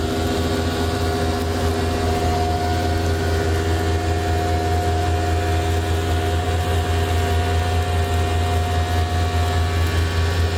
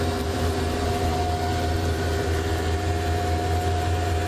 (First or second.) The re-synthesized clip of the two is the second